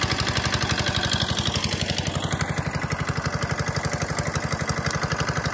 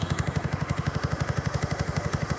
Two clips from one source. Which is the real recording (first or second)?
first